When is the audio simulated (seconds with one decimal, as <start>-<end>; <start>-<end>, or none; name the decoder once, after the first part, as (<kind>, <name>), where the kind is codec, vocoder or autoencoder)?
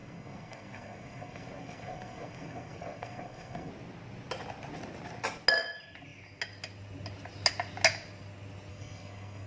0.0-3.7 (codec, SNAC); 8.7-9.5